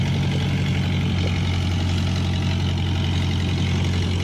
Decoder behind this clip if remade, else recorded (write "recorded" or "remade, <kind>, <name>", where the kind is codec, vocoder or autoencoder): recorded